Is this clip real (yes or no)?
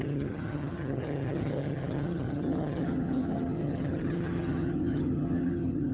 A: no